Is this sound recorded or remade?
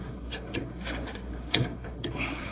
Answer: remade